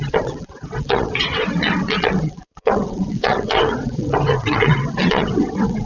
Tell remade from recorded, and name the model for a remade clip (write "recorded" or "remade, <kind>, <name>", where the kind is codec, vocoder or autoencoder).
remade, vocoder, WaveNeXt